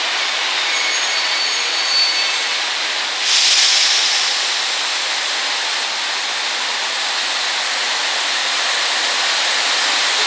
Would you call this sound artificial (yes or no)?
no